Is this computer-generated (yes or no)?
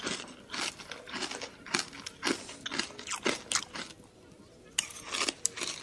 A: no